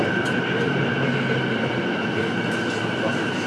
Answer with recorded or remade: recorded